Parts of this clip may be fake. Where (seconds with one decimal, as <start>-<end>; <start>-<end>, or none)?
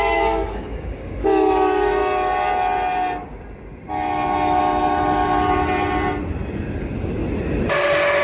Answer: 0.0-2.0; 6.8-7.2